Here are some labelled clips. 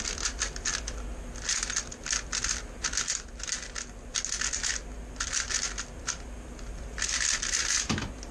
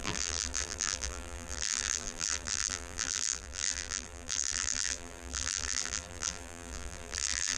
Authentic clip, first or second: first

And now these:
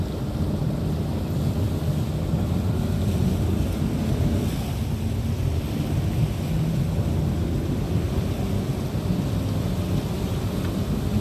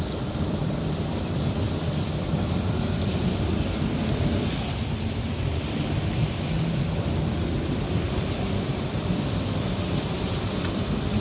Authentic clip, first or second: first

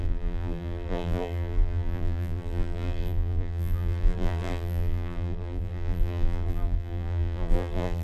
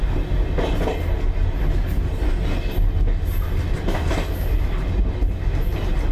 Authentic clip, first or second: second